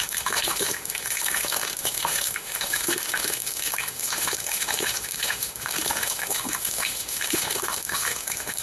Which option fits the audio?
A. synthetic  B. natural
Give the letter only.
A